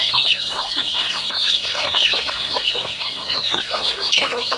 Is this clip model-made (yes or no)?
yes